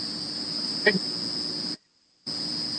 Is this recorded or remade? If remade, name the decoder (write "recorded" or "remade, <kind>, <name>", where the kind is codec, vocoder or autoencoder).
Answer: recorded